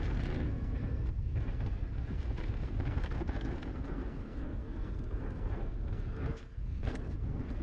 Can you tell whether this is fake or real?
fake